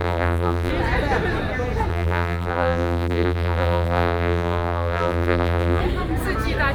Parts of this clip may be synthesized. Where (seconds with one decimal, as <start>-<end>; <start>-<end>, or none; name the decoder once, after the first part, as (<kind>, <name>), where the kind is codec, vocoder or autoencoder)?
0.0-0.7 (vocoder, BigVGAN v2); 1.9-5.8